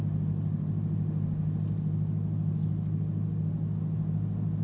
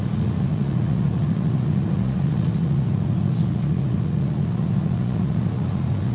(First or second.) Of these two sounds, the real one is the first